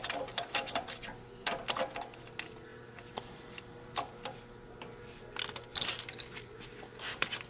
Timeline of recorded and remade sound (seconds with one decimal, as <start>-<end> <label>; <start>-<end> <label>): 0.0-7.5 recorded

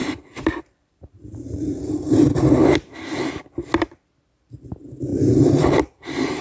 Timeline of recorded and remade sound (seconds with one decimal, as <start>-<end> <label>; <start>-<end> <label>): 0.0-2.2 remade; 2.2-5.1 recorded; 5.1-6.4 remade

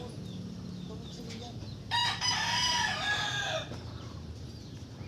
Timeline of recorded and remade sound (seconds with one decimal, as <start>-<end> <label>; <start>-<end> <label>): 0.0-2.0 recorded; 2.0-5.1 remade

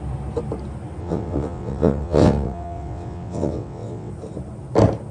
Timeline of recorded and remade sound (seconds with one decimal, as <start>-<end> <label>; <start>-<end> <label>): 0.0-1.0 recorded; 1.0-4.1 remade; 4.1-5.1 recorded

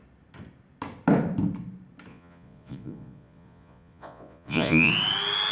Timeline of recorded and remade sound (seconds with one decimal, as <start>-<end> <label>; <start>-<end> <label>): 0.0-2.1 recorded; 2.1-4.9 remade; 4.9-5.5 recorded

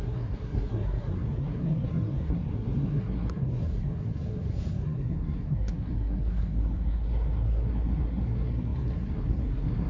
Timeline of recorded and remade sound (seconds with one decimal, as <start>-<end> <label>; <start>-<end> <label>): 0.0-9.9 remade

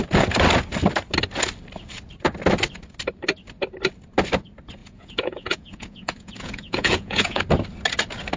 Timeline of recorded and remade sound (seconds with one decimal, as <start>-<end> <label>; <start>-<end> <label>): 0.0-4.8 recorded; 4.8-7.4 remade; 7.4-8.4 recorded

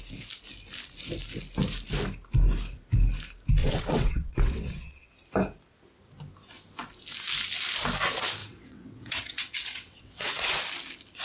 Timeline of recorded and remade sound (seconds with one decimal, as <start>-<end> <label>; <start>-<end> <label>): 0.0-3.6 recorded; 3.6-5.1 remade; 5.1-8.4 recorded; 8.4-10.6 remade; 10.6-11.2 recorded